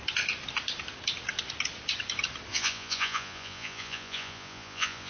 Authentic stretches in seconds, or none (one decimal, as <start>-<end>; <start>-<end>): 0.0-2.5